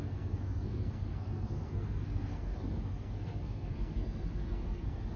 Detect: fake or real fake